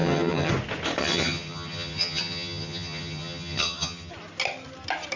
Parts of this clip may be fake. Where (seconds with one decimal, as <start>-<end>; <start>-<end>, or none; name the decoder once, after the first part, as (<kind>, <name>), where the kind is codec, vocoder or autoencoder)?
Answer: 0.0-0.5 (vocoder, HiFi-GAN); 1.0-4.1